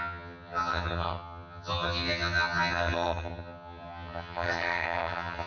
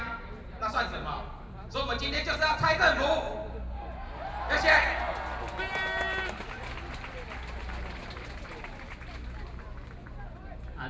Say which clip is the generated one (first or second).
first